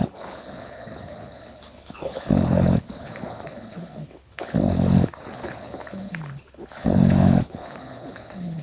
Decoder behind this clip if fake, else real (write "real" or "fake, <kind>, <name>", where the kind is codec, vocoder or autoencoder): fake, codec, HILCodec